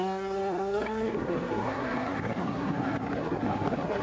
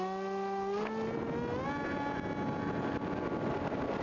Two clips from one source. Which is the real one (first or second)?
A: second